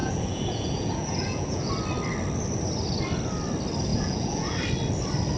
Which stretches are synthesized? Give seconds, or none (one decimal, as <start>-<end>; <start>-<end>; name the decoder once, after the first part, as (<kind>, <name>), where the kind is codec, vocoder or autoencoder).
0.0-1.7 (vocoder, Vocos); 3.9-4.6